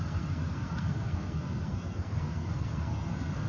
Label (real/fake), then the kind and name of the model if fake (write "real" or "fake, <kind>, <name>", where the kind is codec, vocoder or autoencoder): fake, codec, SNAC